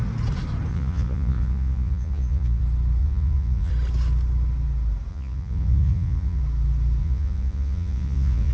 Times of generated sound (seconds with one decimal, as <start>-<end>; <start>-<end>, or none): 0.7-2.6; 3.0-3.7; 5.1-6.4; 7.0-8.5